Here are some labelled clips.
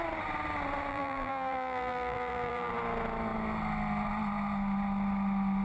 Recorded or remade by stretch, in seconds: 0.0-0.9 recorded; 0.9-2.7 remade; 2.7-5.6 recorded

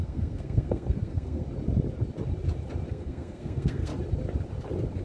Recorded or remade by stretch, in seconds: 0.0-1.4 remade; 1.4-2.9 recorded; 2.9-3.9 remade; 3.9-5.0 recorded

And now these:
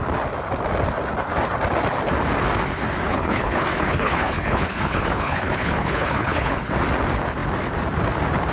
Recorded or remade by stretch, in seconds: 0.0-3.1 recorded; 3.1-6.7 remade; 6.7-8.5 recorded

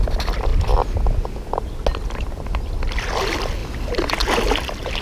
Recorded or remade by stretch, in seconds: 0.0-3.6 recorded; 3.6-4.1 remade; 4.1-5.0 recorded

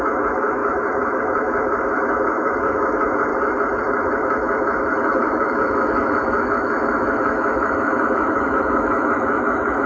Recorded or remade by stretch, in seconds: 0.0-3.3 remade; 3.3-3.8 recorded; 3.8-9.9 remade